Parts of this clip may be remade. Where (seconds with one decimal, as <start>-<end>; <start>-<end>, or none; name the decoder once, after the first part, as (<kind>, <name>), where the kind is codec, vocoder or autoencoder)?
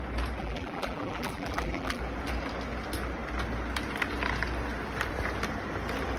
0.4-2.0 (vocoder, BigVGAN v2)